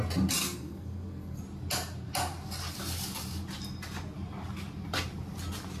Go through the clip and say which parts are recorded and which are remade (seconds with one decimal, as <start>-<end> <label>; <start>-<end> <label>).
0.0-0.4 recorded; 0.4-1.4 remade; 1.4-5.8 recorded

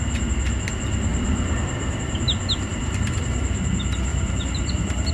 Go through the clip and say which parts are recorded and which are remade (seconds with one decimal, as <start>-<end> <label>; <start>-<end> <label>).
0.0-1.1 recorded; 1.1-2.0 remade; 2.0-2.7 recorded; 2.7-3.6 remade; 3.6-4.1 recorded; 4.1-5.1 remade

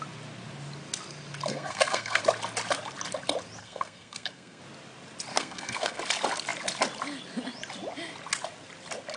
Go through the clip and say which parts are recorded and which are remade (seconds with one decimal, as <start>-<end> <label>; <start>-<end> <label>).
0.0-1.5 recorded; 1.5-2.2 remade; 2.2-3.6 recorded; 3.6-4.6 remade; 4.6-5.3 recorded; 5.3-6.0 remade; 6.0-9.2 recorded